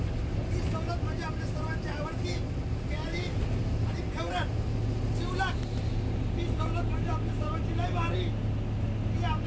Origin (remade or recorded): recorded